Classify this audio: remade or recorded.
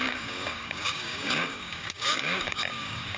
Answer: remade